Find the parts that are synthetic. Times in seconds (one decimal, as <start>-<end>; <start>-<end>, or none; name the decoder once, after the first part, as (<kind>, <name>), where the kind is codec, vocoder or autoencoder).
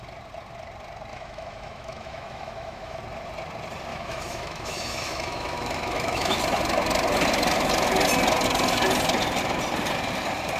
1.1-3.0 (autoencoder, DAC-VAE); 3.9-6.4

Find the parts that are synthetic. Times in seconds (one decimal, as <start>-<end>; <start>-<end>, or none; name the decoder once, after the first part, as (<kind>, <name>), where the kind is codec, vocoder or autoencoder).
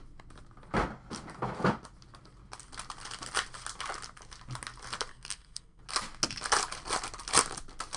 5.1-5.8 (codec, SNAC)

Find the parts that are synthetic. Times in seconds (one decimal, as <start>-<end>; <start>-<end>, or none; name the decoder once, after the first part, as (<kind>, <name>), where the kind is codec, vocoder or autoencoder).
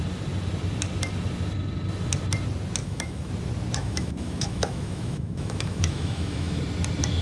2.8-3.3 (autoencoder, DAC-VAE); 3.8-6.6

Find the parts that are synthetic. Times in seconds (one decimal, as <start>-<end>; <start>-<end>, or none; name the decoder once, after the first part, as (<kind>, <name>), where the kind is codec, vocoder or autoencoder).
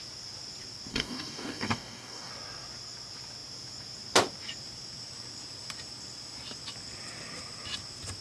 0.9-2.3 (codec, DAC)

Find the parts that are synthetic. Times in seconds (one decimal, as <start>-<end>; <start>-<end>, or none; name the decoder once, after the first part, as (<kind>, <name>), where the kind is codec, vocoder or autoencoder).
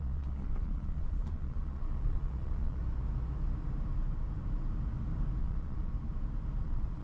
0.0-2.8 (vocoder, Vocos); 5.4-5.9; 6.6-7.0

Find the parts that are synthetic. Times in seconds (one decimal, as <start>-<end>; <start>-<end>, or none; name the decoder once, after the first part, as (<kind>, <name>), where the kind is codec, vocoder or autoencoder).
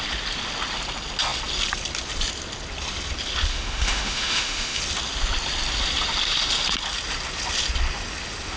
3.5-4.8 (autoencoder, DAC-VAE)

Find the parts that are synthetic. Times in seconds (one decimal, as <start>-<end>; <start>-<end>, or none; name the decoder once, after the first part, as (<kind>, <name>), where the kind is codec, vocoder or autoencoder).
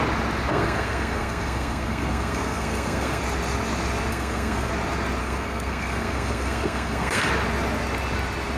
0.5-3.2 (codec, SNAC); 4.1-4.7; 5.2-7.3